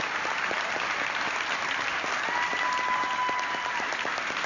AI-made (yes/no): no